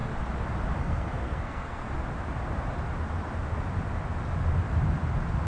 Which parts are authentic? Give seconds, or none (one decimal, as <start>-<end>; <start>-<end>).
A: 0.0-0.8; 1.9-5.5